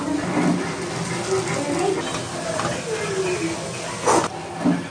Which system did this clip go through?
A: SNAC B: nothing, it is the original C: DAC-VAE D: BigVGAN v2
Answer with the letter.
B